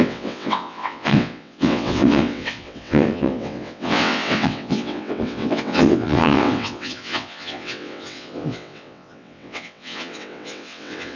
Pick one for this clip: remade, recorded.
remade